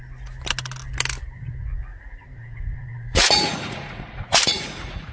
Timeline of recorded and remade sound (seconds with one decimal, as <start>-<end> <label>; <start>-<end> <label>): 0.0-1.9 recorded; 1.9-5.1 remade